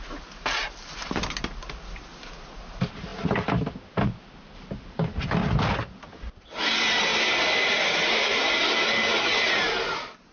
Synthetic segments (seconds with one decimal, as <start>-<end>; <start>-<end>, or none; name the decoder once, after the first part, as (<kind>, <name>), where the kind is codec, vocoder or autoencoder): none